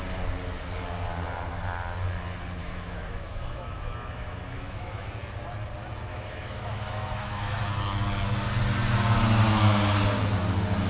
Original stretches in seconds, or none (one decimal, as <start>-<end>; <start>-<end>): 0.0-2.6; 5.1-6.1; 7.6-10.9

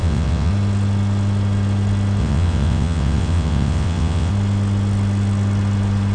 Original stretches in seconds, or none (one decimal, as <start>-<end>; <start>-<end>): 0.5-2.2; 4.3-6.1

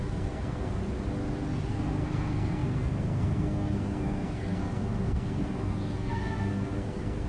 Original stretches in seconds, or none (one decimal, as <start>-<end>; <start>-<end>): 0.8-1.7

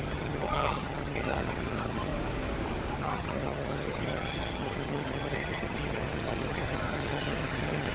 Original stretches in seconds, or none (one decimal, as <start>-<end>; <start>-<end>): 2.1-3.0